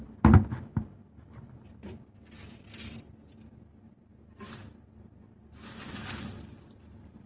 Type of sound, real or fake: real